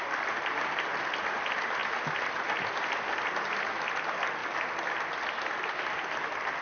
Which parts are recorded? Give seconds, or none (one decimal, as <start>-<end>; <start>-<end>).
0.0-6.6